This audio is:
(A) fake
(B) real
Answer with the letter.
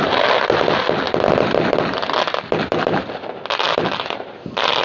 B